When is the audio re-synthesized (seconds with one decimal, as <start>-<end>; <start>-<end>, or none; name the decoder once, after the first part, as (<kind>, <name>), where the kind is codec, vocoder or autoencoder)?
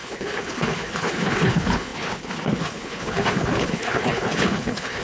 0.0-5.0 (codec, HILCodec)